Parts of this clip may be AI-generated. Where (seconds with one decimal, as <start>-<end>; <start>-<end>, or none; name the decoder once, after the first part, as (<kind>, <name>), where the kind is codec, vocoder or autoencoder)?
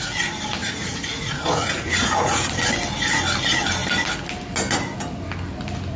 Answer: 0.6-2.5 (vocoder, Vocos)